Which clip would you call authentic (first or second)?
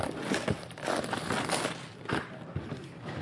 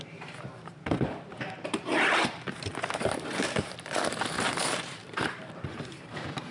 first